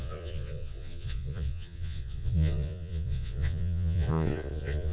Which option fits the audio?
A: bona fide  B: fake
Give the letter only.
B